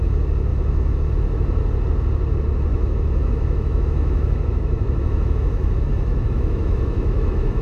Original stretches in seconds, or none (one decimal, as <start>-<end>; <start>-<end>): 0.0-0.5; 1.1-2.7